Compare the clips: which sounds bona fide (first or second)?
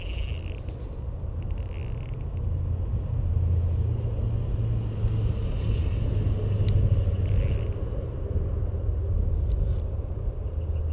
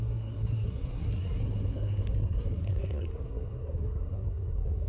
first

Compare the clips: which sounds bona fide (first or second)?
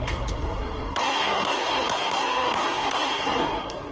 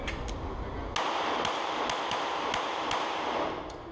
second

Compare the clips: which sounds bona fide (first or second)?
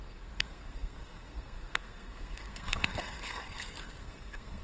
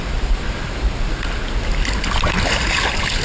second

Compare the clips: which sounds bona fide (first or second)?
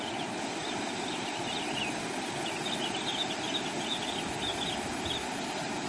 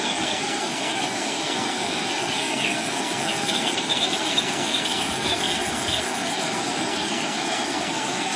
first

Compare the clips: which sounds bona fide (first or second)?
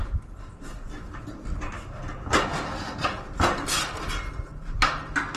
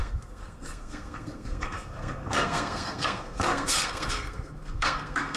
first